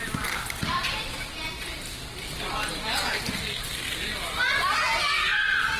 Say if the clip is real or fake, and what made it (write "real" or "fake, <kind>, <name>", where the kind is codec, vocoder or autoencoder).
real